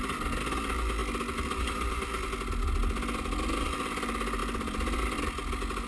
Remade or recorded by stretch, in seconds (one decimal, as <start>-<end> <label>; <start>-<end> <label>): 0.0-5.9 recorded